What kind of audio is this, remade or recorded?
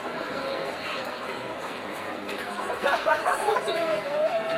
remade